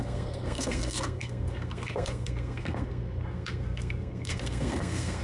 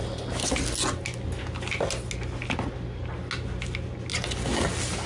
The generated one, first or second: first